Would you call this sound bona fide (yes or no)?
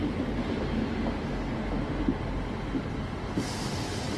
yes